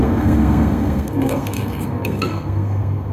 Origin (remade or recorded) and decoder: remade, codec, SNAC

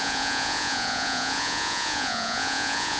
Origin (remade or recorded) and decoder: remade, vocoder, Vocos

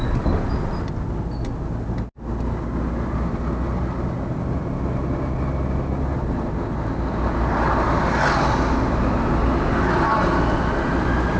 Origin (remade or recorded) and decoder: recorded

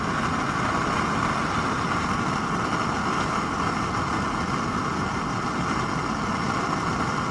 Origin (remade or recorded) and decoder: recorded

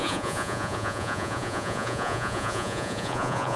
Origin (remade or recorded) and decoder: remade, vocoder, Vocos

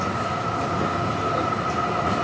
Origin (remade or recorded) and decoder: recorded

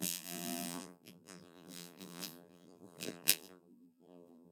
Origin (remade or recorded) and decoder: remade, vocoder, BigVGAN v2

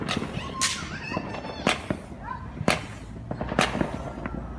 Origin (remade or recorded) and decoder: recorded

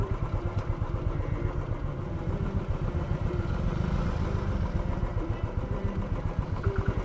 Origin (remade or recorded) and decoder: remade, vocoder, BigVGAN v2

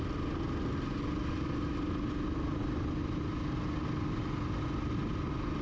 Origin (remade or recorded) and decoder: recorded